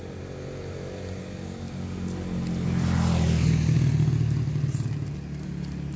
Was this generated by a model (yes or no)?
no